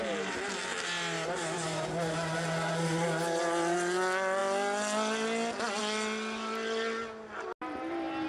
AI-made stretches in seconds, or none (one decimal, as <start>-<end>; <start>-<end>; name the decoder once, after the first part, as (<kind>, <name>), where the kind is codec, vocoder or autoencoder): none